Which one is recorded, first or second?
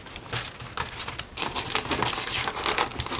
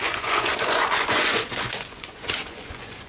first